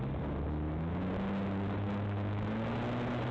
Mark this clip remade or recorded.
recorded